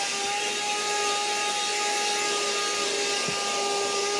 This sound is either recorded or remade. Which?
recorded